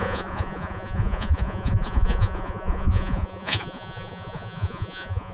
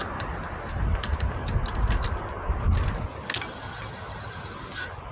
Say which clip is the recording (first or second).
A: second